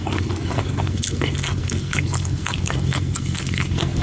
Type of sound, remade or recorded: remade